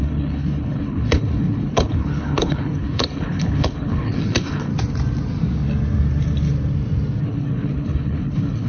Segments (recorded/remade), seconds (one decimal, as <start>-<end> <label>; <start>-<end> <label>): 0.0-4.7 remade; 4.7-7.2 recorded; 7.2-8.7 remade